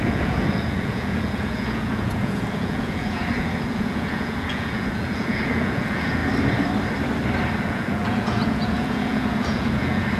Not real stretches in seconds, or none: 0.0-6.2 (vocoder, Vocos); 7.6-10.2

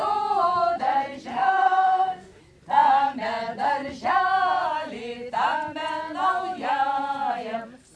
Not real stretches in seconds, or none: 1.3-2.4 (autoencoder, DAC-VAE)